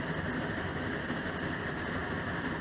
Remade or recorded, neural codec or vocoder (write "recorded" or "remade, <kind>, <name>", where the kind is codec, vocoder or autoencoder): recorded